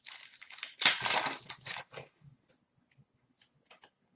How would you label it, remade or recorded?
recorded